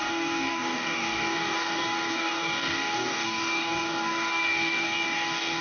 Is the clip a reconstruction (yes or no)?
yes